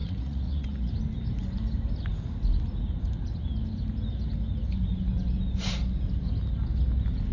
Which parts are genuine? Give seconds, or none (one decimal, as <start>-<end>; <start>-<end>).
0.9-7.3